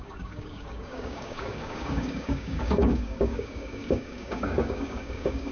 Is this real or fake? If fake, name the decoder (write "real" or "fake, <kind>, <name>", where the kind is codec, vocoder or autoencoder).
fake, codec, DAC